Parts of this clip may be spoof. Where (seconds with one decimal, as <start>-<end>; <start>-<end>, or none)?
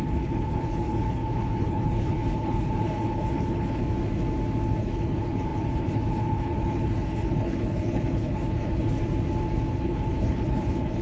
0.0-3.8; 4.8-9.0; 9.7-11.0